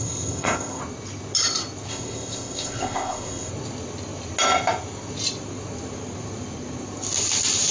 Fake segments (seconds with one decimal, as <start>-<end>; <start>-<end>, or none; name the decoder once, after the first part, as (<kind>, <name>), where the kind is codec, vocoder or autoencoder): 0.0-0.8 (codec, ZipCodec); 1.9-3.5